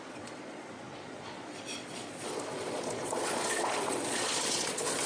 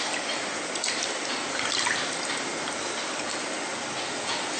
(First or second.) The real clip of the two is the second